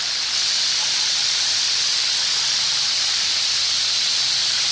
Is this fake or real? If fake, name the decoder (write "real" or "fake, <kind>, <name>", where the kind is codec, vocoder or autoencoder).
fake, vocoder, BigVGAN v2